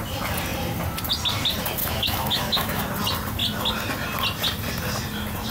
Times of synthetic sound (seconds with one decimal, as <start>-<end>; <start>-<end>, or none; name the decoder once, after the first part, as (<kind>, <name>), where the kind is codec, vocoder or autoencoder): 1.8-2.8 (autoencoder, DAC-VAE)